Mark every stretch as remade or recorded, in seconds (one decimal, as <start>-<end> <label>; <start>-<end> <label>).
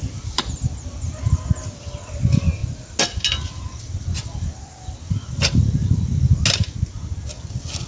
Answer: 0.0-7.9 recorded